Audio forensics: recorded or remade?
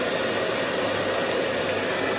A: recorded